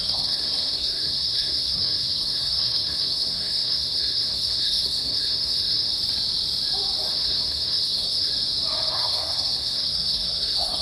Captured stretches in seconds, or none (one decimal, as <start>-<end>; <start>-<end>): 5.9-7.1; 8.3-8.9